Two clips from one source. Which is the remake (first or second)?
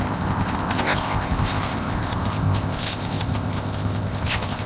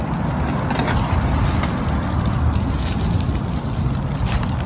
first